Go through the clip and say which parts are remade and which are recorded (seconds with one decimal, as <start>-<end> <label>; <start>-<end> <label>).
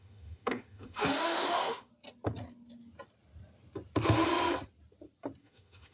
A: 0.0-1.9 remade; 1.9-5.4 recorded; 5.4-5.9 remade